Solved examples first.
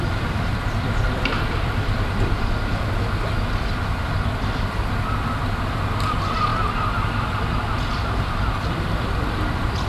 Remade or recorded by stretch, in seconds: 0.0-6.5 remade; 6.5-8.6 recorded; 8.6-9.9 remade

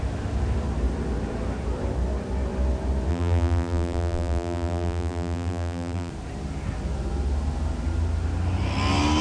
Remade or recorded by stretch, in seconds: 0.0-3.1 recorded; 3.1-6.1 remade; 6.1-9.2 recorded

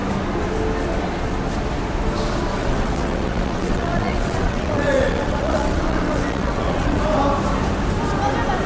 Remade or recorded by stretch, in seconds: 0.0-2.6 recorded; 2.6-7.0 remade; 7.0-8.7 recorded

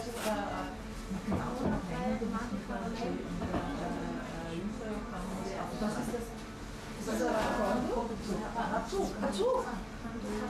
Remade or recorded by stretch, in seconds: 0.0-10.5 recorded

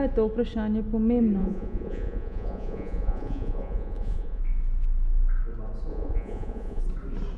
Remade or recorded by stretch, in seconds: 0.0-1.4 recorded; 1.4-4.4 remade; 4.4-5.9 recorded; 5.9-6.8 remade; 6.8-7.4 recorded